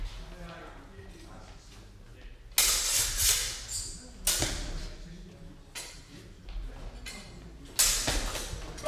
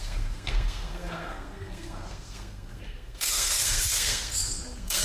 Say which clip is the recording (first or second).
first